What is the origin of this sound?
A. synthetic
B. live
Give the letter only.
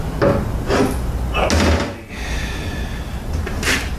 B